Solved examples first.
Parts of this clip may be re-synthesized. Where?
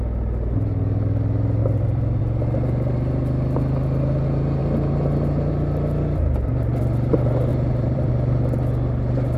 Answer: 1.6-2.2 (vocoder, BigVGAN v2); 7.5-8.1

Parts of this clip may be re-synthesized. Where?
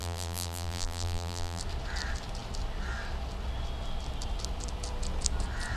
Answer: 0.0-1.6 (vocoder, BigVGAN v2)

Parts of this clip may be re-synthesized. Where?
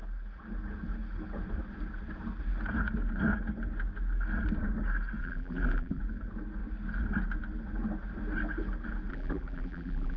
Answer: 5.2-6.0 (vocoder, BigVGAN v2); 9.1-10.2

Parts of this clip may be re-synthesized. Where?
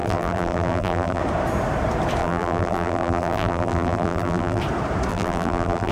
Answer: 0.0-1.2 (vocoder, BigVGAN v2); 2.2-4.6; 5.1-5.9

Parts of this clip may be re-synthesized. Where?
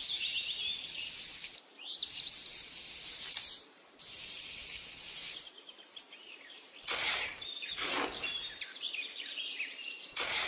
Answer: 0.0-10.5 (vocoder, BigVGAN v2)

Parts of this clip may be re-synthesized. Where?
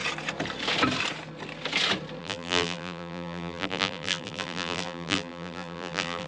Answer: 2.2-6.3 (vocoder, BigVGAN v2)